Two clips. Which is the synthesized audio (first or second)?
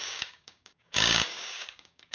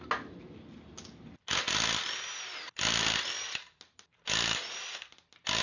first